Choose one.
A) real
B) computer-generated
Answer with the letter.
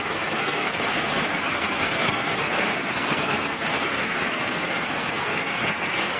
B